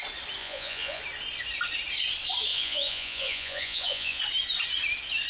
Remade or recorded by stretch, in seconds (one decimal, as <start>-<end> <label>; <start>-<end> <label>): 0.0-0.4 recorded; 0.4-1.0 remade; 1.0-2.5 recorded; 2.5-4.2 remade; 4.2-5.3 recorded